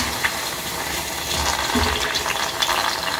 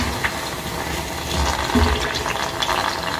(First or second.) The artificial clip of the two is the first